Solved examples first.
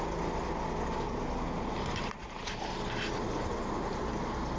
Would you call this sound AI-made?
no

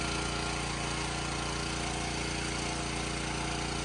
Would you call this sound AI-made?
no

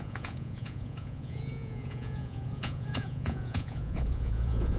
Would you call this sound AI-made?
yes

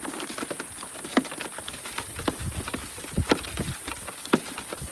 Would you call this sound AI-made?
no